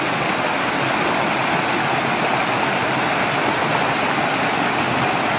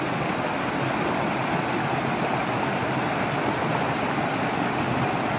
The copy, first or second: second